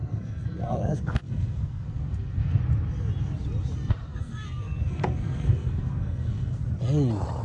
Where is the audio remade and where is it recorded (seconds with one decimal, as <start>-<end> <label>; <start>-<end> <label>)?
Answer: 0.0-2.6 remade; 2.6-4.1 recorded; 4.1-6.6 remade; 6.6-7.4 recorded